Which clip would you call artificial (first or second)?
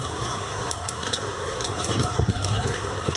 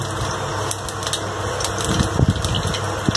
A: first